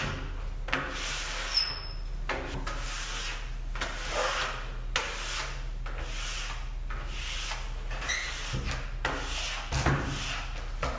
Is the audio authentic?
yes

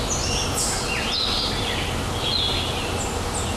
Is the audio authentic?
yes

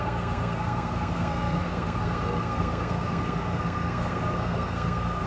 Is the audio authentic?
no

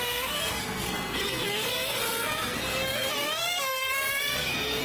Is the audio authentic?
no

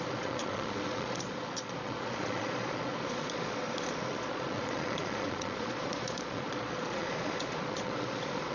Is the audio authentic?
no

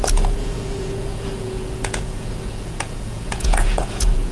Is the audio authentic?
no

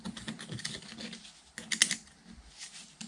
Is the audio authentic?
yes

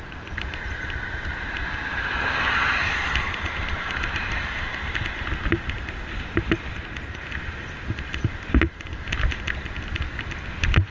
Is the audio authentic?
yes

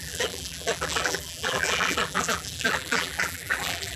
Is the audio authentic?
no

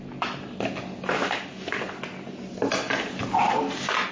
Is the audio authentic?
yes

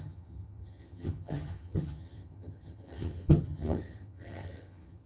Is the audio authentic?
no